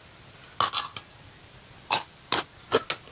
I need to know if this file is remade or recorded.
recorded